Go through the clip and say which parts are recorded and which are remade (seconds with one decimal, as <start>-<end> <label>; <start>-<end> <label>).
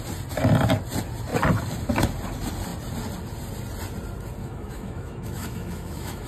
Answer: 0.0-4.4 recorded; 4.4-6.3 remade